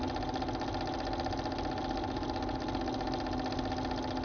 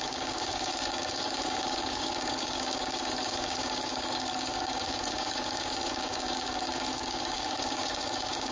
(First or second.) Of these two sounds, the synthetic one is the second